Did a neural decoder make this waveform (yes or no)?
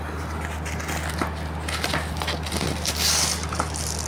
no